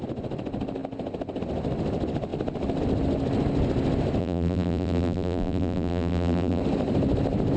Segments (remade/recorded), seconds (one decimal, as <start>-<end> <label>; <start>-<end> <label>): 0.0-4.2 recorded; 4.2-6.6 remade; 6.6-7.6 recorded